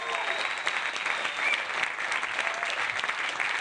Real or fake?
real